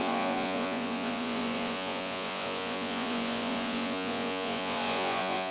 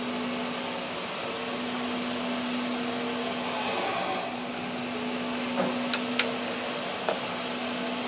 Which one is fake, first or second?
first